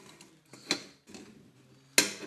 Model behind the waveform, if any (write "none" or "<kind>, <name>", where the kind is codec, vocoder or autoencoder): none